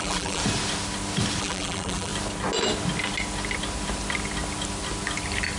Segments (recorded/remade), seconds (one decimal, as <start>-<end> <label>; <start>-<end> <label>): 0.0-0.4 remade; 0.4-1.4 recorded; 1.4-2.1 remade; 2.1-5.6 recorded